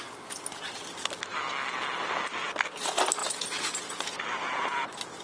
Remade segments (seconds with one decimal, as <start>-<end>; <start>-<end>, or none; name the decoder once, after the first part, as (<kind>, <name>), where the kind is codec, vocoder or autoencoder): 3.2-4.2 (vocoder, Vocos)